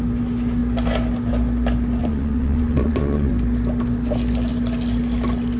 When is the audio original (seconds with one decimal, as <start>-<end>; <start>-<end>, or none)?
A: 0.0-2.0; 3.3-5.6